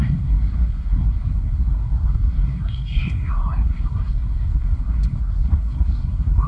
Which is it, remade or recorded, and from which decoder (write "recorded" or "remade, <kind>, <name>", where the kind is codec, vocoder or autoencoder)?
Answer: remade, codec, SNAC